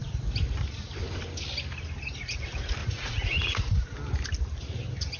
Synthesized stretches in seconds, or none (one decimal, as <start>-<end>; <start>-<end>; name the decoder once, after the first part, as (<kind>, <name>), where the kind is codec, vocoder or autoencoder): 2.8-3.7 (vocoder, Vocos)